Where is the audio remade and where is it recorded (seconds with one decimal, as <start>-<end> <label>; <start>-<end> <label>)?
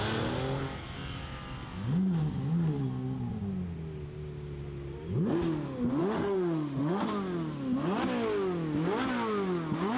0.0-6.0 recorded; 6.0-7.1 remade; 7.1-10.0 recorded